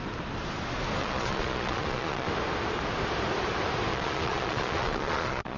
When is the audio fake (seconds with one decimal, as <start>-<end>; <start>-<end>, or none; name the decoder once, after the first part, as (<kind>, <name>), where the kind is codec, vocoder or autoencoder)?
1.0-2.3 (vocoder, Vocos); 3.9-5.6